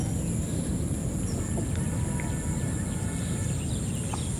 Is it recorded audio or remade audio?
recorded